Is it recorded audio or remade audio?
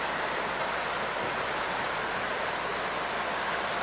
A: remade